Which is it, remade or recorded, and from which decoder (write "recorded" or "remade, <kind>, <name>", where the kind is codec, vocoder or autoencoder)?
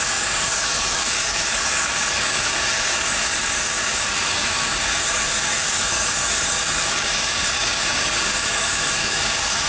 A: remade, codec, DAC